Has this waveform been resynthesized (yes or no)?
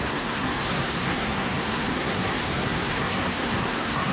yes